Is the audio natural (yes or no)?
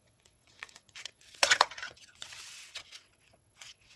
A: no